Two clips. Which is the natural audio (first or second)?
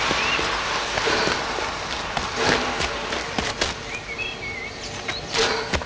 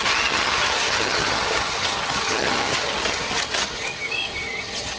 first